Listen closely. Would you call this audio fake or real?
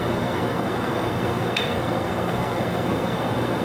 fake